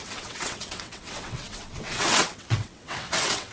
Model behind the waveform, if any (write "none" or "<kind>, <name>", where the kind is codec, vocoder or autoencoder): vocoder, WaveNeXt